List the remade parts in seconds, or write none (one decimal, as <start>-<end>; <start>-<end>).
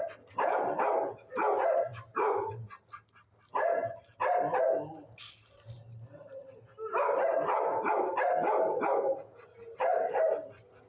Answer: 1.9-2.9